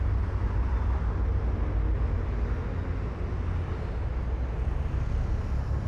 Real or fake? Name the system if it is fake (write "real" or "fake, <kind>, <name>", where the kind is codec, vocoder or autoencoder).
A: real